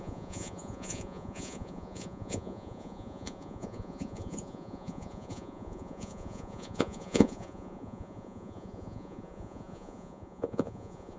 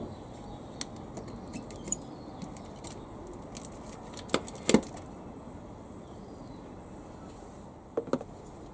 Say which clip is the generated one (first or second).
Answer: first